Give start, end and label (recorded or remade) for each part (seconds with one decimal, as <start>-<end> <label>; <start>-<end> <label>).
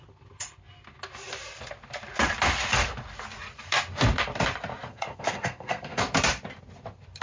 0.0-4.9 recorded; 4.9-6.0 remade; 6.0-7.2 recorded